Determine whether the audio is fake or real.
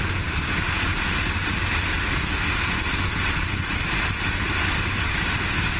real